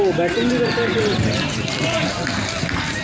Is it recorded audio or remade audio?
recorded